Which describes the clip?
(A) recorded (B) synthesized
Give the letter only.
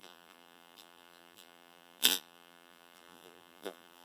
B